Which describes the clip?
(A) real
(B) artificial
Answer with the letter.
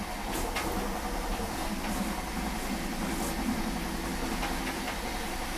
A